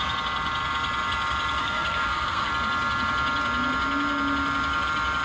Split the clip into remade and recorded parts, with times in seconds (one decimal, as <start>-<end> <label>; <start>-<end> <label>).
0.0-1.6 recorded; 1.6-2.5 remade; 2.5-5.2 recorded